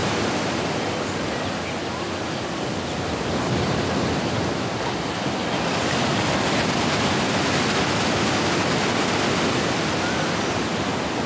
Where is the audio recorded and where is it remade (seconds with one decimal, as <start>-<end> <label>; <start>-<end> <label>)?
0.0-11.3 recorded